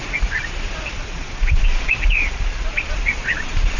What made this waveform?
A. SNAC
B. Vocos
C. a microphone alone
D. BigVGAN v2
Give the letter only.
B